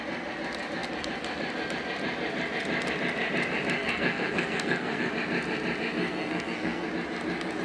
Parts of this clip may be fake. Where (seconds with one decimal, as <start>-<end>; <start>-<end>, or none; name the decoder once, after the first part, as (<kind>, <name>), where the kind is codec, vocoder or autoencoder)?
3.8-5.1 (codec, SNAC); 6.0-6.9